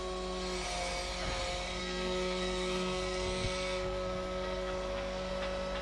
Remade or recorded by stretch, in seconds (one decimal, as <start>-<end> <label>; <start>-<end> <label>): 0.0-1.8 recorded; 1.8-5.3 remade; 5.3-5.8 recorded